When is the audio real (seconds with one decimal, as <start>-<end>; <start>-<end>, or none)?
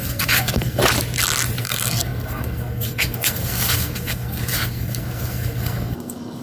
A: 0.8-1.6